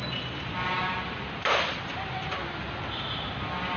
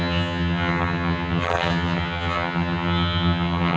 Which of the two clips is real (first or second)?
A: first